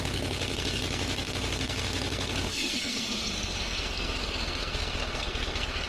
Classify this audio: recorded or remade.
remade